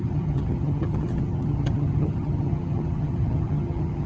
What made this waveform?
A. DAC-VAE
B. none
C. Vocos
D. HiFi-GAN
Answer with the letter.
D